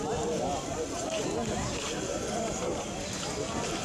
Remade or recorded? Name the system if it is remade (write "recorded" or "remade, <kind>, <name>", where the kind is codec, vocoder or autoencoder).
recorded